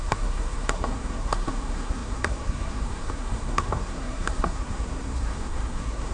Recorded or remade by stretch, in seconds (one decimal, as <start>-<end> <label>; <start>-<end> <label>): 0.0-6.1 remade